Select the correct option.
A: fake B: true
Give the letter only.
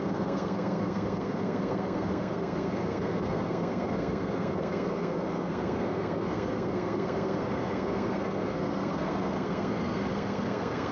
A